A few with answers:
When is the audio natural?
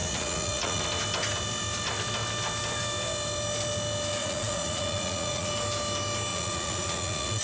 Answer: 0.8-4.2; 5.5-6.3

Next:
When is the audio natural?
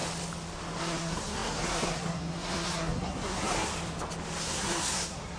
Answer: 0.0-0.8; 3.7-4.4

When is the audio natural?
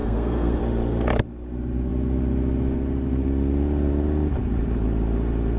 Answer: 0.6-5.6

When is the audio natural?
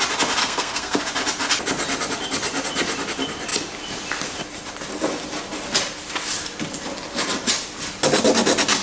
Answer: 0.0-0.4; 1.0-8.8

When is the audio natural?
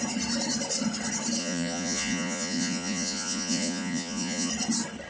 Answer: 0.0-1.4; 4.5-5.1